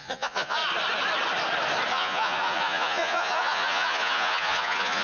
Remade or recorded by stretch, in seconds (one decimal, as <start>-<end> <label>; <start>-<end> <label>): 0.0-0.6 remade; 0.6-1.9 recorded; 1.9-5.0 remade